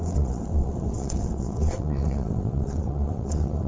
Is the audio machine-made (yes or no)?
yes